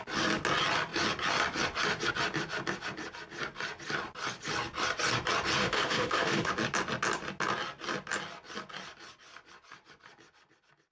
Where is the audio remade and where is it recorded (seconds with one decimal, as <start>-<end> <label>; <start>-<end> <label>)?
0.0-5.6 recorded; 5.6-6.5 remade; 6.5-10.9 recorded